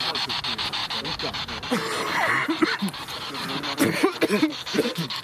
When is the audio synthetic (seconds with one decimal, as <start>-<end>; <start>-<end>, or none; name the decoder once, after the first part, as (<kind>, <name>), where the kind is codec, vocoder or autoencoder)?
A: 4.5-5.2 (codec, SNAC)